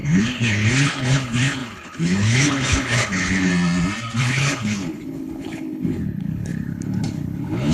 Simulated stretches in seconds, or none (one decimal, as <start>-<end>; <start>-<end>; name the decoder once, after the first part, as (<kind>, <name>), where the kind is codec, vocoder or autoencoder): 0.0-3.5 (codec, HILCodec); 4.2-7.7